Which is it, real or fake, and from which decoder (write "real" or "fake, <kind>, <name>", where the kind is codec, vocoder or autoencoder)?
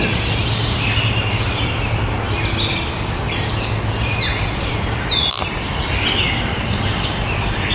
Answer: real